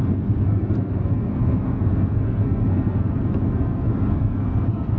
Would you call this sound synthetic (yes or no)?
yes